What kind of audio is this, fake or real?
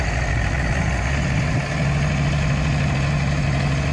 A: real